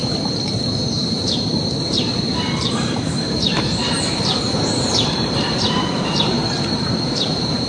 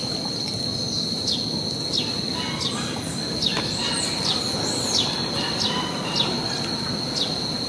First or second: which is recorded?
second